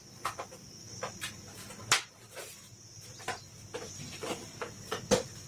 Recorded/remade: recorded